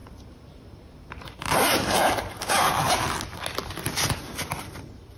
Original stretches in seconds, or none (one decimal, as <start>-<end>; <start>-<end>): 3.1-5.2